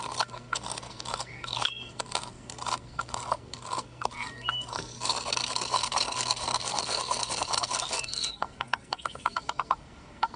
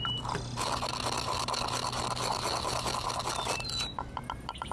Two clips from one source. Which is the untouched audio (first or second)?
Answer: second